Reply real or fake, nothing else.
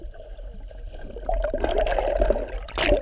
real